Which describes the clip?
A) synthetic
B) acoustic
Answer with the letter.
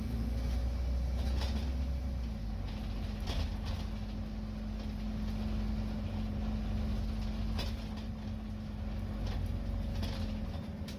B